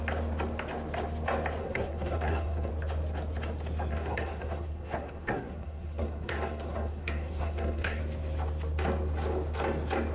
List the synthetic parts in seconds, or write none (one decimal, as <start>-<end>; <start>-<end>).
1.6-2.7; 3.9-8.0